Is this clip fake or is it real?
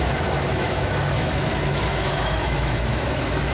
fake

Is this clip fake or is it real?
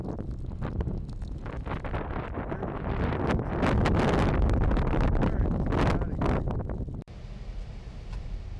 real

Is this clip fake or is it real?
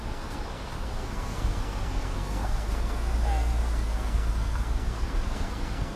fake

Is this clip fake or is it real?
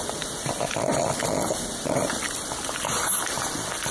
real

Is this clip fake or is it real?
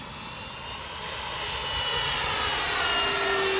real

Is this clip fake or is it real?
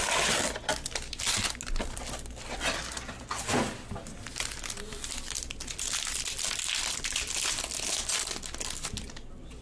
real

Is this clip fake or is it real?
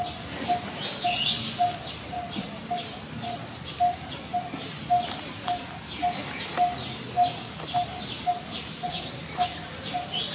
real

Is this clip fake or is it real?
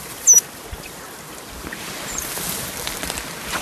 real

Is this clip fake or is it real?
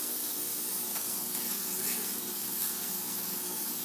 fake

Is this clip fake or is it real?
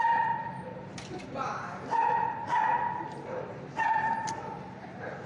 fake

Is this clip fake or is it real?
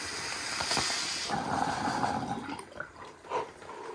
fake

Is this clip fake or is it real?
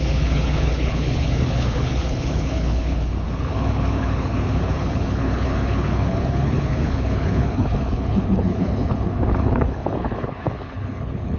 fake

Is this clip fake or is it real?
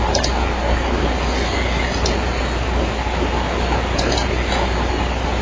real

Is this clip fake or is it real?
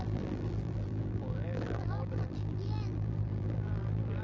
fake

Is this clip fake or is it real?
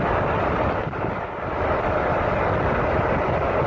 real